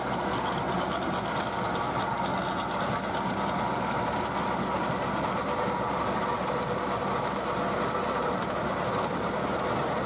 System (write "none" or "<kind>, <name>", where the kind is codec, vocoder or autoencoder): none